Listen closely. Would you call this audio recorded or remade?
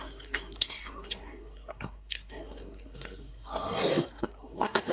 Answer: remade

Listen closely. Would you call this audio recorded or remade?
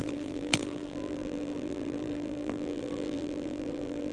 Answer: remade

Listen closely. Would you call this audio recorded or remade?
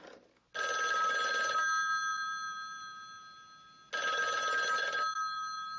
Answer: recorded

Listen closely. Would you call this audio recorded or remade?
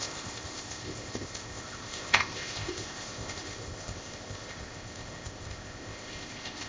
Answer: remade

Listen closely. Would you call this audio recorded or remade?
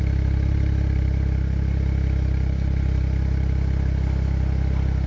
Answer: recorded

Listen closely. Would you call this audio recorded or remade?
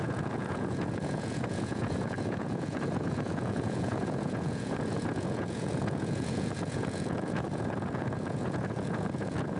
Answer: remade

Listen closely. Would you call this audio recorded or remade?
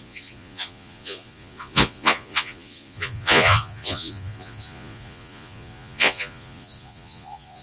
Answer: remade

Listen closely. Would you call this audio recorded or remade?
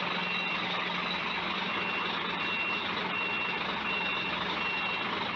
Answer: recorded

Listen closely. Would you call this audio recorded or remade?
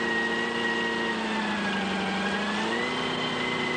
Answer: recorded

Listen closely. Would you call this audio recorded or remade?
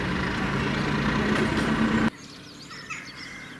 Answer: recorded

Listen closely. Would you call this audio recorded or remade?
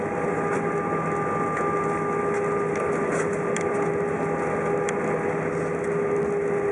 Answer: recorded